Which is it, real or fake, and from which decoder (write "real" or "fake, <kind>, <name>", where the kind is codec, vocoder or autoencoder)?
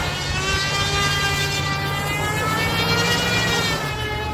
real